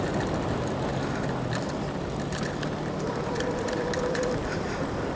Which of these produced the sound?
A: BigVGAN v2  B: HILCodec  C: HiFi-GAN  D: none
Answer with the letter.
D